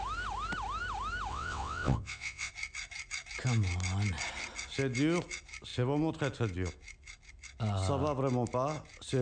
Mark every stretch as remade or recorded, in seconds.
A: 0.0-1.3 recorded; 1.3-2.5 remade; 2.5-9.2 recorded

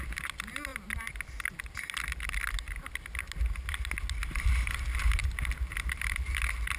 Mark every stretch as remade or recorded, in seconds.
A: 0.0-6.8 recorded

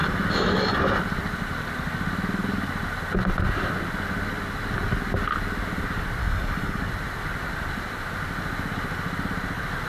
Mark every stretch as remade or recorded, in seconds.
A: 0.0-6.2 recorded; 6.2-6.9 remade; 6.9-9.9 recorded

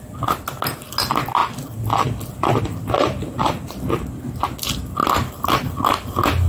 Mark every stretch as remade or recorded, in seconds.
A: 0.0-5.0 recorded; 5.0-6.1 remade; 6.1-6.5 recorded

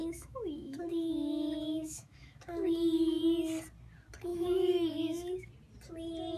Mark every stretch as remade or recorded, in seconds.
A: 0.0-3.2 remade; 3.2-4.3 recorded; 4.3-5.5 remade; 5.5-6.4 recorded